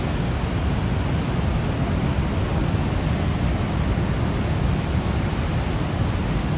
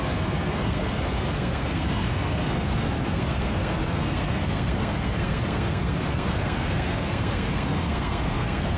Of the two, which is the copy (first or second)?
second